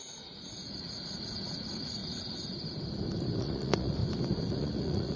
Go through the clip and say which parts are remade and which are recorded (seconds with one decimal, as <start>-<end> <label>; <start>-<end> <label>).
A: 0.0-2.0 remade; 2.0-3.4 recorded; 3.4-4.0 remade; 4.0-4.5 recorded; 4.5-5.2 remade

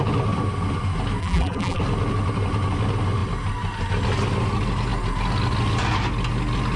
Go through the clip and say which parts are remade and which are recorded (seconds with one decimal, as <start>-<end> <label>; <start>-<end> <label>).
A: 0.0-1.2 recorded; 1.2-1.8 remade; 1.8-6.8 recorded

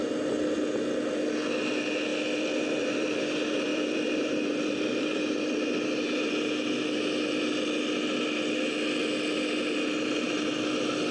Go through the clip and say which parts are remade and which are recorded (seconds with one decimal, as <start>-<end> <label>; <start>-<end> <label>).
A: 0.0-2.1 recorded; 2.1-3.2 remade; 3.2-3.7 recorded; 3.7-5.2 remade; 5.2-11.1 recorded

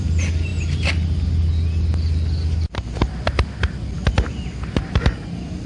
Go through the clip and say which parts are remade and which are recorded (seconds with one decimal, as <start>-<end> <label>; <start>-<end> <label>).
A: 0.0-5.7 recorded

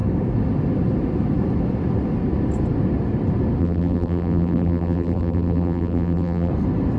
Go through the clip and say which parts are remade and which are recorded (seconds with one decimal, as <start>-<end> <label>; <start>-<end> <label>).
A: 0.0-3.6 recorded; 3.6-6.5 remade; 6.5-7.0 recorded

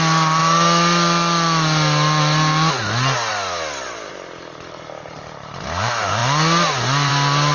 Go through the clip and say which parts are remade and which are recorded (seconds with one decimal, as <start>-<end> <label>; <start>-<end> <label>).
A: 0.0-3.3 recorded; 3.3-4.1 remade; 4.1-7.5 recorded